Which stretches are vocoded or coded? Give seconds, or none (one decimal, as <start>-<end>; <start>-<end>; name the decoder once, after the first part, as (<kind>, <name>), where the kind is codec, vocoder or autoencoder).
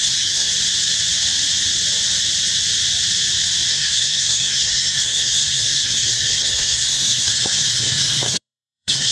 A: 0.0-0.5 (codec, SNAC); 3.7-9.1